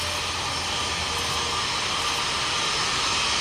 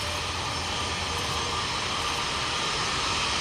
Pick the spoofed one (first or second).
second